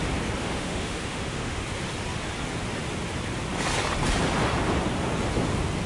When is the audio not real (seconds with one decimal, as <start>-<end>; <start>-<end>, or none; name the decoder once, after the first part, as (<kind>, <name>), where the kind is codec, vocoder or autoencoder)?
0.4-1.6 (autoencoder, DAC-VAE)